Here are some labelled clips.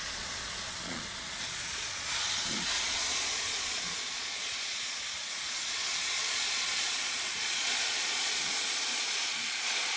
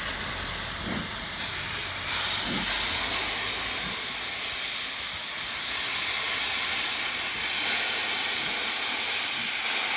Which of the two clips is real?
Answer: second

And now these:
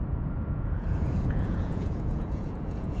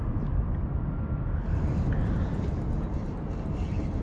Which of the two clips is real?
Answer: second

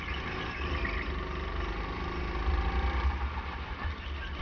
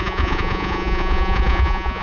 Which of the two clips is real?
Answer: first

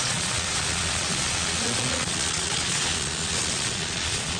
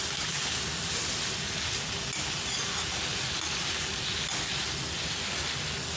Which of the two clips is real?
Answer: second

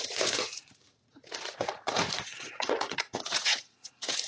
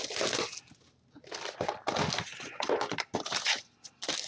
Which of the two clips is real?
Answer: second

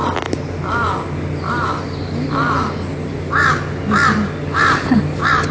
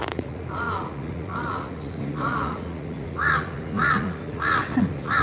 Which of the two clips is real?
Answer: first